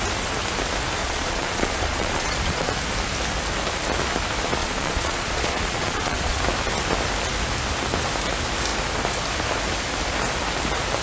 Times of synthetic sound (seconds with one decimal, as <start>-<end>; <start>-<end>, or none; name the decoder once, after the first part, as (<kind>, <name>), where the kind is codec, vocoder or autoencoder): 1.0-2.7 (vocoder, Vocos); 4.6-6.4